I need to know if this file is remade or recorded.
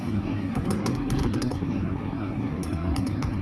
remade